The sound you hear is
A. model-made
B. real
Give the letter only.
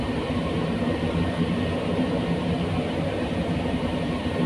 A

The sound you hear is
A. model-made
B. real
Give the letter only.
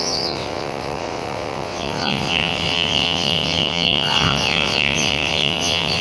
A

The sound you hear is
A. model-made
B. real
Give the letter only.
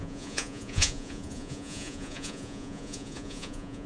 A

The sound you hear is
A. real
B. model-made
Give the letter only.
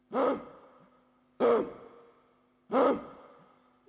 A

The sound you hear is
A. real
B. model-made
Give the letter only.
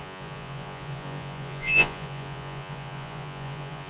B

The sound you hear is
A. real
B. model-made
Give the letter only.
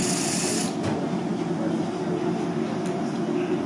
A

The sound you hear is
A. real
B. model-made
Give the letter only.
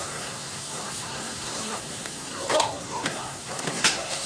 B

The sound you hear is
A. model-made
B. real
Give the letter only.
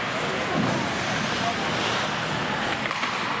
B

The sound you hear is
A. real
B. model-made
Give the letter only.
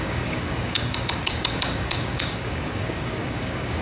B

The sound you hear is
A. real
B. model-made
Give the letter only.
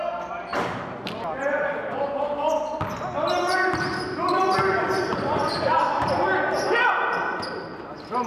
A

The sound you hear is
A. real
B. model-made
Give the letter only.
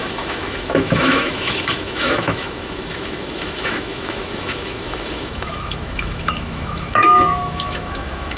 B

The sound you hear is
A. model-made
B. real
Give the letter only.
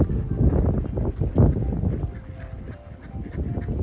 B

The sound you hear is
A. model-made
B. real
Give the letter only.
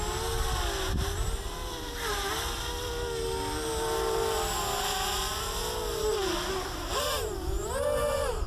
B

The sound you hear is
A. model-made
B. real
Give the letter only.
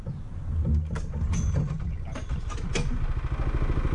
B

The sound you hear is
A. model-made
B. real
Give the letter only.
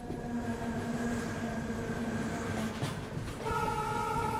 B